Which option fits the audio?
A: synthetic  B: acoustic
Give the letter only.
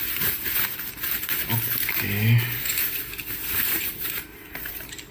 B